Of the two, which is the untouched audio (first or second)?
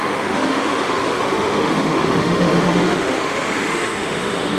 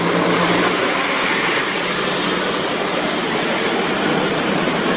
second